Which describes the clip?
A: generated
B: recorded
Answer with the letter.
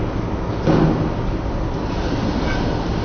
B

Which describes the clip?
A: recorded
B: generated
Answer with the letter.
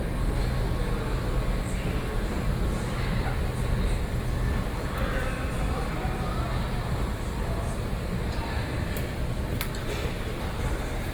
A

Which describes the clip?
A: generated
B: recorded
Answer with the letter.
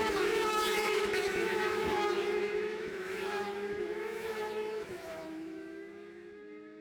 A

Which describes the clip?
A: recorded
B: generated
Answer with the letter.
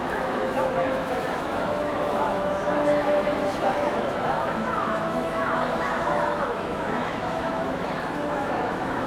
B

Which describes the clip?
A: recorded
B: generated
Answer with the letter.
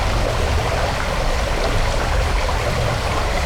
A